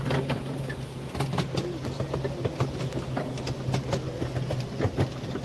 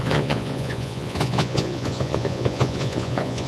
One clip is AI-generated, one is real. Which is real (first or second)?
first